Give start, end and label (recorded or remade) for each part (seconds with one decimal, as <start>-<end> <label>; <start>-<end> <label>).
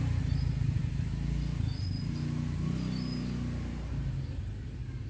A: 0.0-5.1 recorded